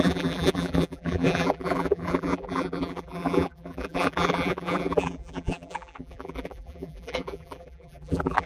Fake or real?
fake